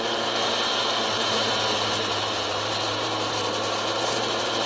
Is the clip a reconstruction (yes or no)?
yes